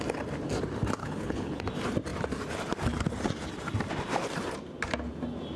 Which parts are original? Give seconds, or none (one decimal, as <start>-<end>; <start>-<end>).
0.0-1.0; 1.6-5.6